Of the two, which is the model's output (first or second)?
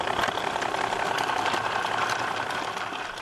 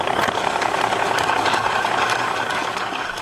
second